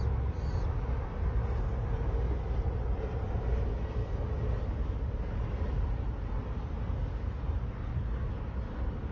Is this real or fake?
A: real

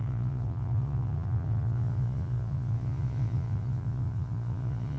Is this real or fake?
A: fake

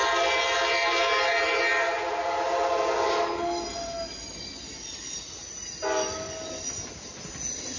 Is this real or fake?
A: real